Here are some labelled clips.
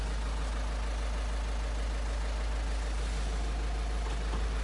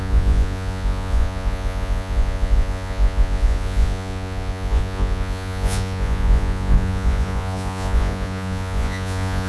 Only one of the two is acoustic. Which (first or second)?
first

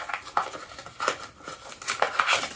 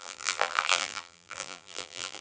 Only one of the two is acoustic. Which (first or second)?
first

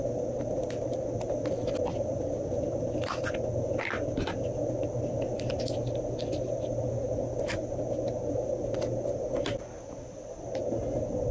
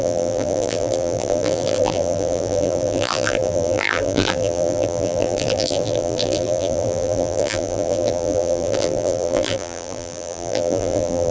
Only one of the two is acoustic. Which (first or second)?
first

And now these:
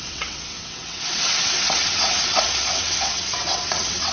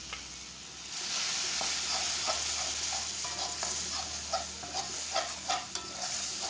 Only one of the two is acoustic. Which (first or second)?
second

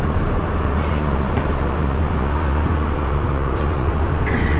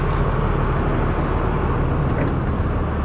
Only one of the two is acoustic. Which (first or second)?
second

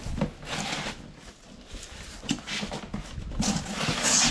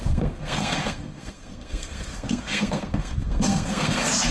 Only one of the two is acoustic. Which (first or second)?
first